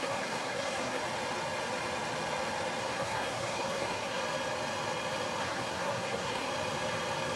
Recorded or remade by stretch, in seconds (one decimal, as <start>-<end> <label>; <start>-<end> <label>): 0.0-1.0 remade; 1.0-2.8 recorded; 2.8-4.2 remade; 4.2-5.4 recorded; 5.4-6.5 remade; 6.5-7.4 recorded

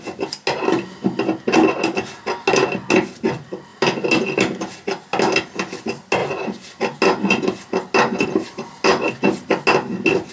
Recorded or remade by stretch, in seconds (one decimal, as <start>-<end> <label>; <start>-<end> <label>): 0.0-10.3 recorded

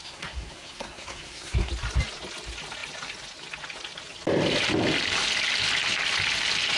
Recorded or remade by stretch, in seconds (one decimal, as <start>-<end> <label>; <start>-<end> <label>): 0.0-1.7 remade; 1.7-6.8 recorded

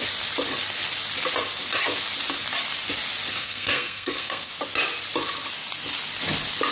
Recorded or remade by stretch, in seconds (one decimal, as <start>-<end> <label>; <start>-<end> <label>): 0.0-3.3 recorded; 3.3-4.5 remade; 4.5-6.7 recorded

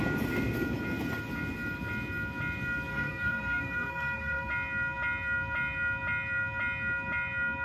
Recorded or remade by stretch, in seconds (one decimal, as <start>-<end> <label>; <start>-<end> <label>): 0.0-2.9 recorded; 2.9-4.5 remade; 4.5-7.6 recorded

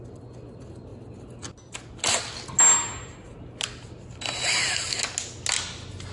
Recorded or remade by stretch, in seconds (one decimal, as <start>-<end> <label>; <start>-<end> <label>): 0.0-6.1 recorded

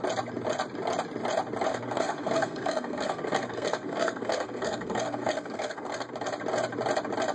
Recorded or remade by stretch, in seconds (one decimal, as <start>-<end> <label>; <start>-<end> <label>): 0.0-1.7 recorded; 1.7-6.1 remade; 6.1-7.3 recorded

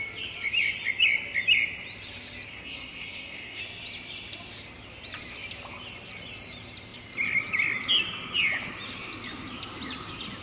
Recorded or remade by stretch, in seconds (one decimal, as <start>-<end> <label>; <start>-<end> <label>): 0.0-2.5 recorded; 2.5-3.6 remade; 3.6-10.4 recorded